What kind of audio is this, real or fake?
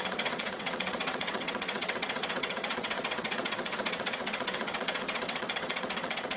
fake